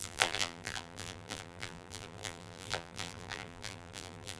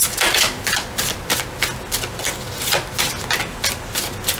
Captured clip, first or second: second